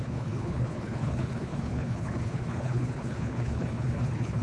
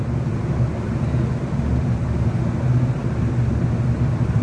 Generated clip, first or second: first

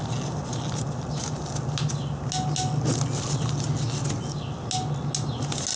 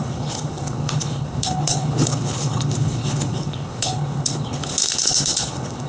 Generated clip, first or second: second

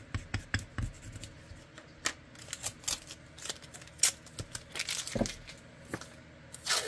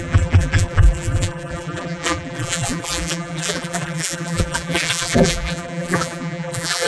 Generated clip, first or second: second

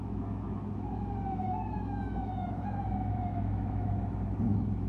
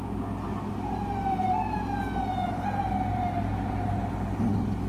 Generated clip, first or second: first